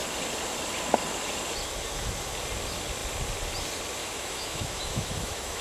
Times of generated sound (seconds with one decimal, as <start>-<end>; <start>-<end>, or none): 4.0-5.6